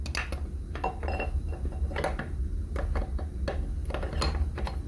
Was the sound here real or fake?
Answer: real